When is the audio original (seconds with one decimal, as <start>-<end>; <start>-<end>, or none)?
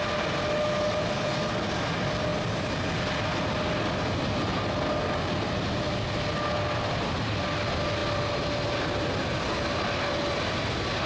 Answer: 0.0-11.1